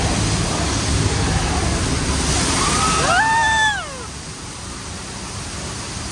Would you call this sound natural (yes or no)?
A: yes